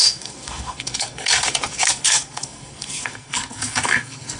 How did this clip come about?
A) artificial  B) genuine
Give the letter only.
A